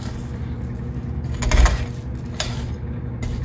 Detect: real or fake real